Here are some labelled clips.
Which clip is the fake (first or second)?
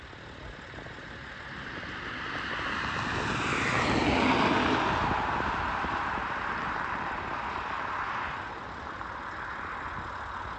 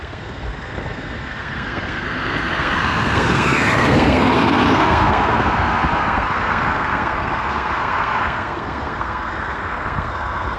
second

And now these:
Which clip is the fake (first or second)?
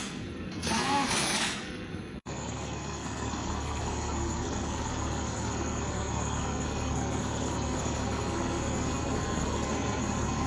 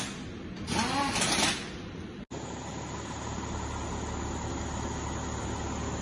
first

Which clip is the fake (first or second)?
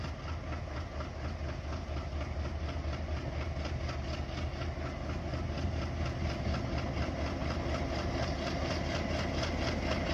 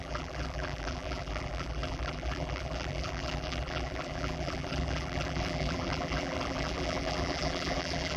second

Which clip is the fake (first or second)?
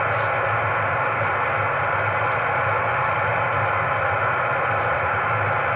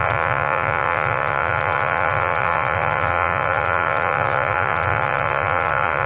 second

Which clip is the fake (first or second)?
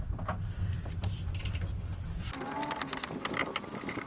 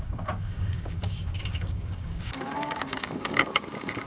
second